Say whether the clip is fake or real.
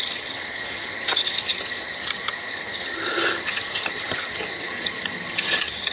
fake